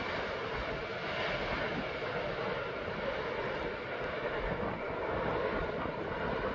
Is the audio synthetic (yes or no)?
no